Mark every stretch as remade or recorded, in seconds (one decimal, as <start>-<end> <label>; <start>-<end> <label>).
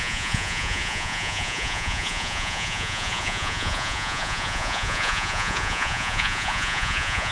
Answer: 0.0-7.3 remade